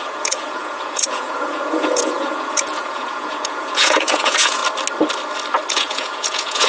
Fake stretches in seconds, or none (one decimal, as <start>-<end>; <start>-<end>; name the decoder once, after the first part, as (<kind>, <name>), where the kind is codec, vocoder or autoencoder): 0.0-4.6 (vocoder, Vocos); 5.7-6.7